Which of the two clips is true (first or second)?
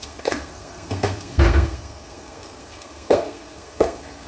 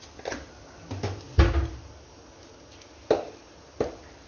second